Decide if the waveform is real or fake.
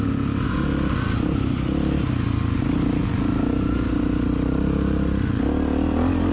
real